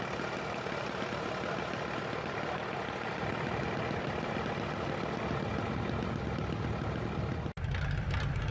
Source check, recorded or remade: recorded